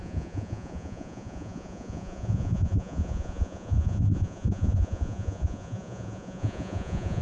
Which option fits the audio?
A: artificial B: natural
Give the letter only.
A